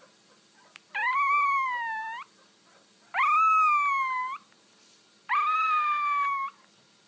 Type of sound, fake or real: real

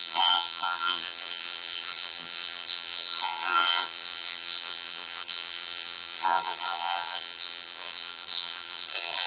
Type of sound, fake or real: fake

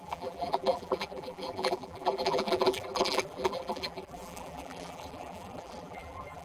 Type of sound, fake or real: fake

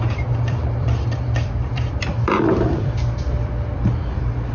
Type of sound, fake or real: fake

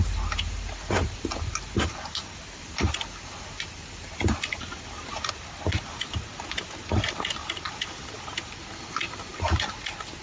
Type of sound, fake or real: real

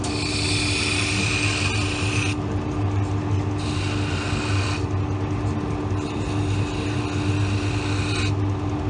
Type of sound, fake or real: real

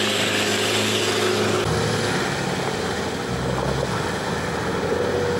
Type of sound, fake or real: real